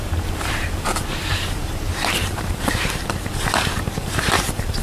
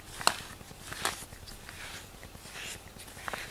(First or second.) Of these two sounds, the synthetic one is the first